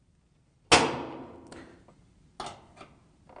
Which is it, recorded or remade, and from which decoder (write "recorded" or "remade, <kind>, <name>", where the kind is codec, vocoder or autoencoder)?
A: recorded